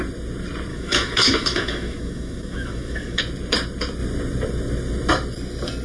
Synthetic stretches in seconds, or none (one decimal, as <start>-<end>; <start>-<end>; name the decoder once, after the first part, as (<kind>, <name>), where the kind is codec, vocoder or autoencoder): 0.7-3.2 (autoencoder, DAC-VAE)

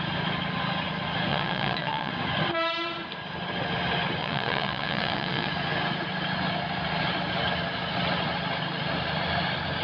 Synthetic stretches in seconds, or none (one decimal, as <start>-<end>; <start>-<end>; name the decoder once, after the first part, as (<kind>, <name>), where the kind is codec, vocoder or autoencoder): 1.3-2.1 (vocoder, WaveNeXt); 4.2-5.5